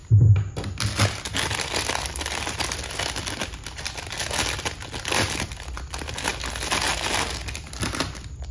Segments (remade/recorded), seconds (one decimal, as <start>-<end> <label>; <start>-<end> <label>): 0.0-8.5 recorded